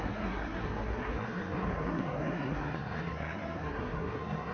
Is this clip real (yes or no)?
no